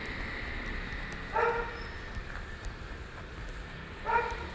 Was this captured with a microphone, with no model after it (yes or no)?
yes